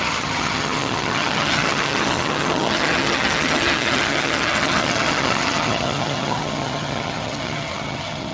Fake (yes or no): yes